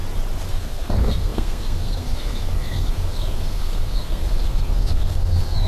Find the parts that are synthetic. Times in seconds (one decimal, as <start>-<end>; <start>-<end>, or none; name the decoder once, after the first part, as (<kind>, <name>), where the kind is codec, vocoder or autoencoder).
0.5-5.7 (codec, SNAC)